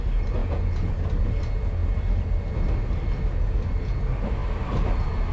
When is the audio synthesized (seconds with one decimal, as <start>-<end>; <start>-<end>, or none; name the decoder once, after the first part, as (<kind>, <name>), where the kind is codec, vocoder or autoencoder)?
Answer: 0.4-0.9 (vocoder, Vocos)